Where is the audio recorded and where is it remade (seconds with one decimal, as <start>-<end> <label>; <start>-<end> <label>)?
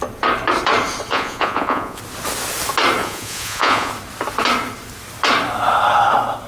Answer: 0.0-1.1 recorded; 1.1-2.0 remade; 2.0-3.0 recorded; 3.0-3.9 remade; 3.9-6.5 recorded